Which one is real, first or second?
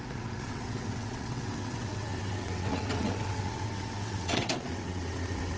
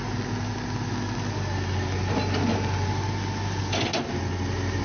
second